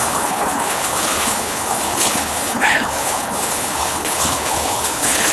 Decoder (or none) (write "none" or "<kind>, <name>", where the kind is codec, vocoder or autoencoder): codec, HILCodec